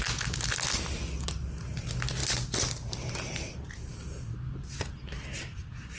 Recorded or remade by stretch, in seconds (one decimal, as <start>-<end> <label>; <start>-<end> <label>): 0.0-6.0 recorded